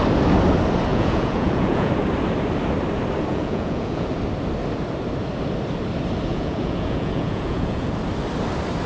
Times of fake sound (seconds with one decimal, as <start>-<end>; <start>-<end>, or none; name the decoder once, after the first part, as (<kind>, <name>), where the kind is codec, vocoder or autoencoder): 0.9-1.9 (vocoder, Vocos); 3.3-4.1; 6.3-7.9